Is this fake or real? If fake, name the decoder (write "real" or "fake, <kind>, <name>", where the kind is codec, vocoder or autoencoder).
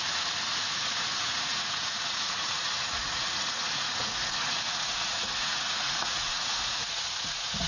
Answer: fake, vocoder, Vocos